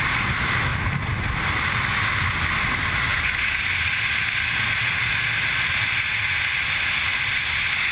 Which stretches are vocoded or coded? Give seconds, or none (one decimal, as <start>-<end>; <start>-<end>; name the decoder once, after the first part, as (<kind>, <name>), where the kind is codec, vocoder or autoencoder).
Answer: none